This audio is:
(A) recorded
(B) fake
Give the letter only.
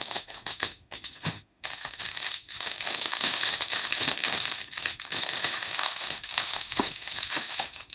B